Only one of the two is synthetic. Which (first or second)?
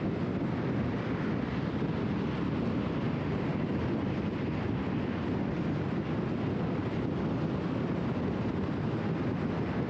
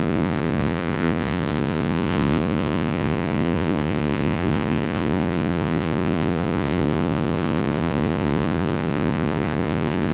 second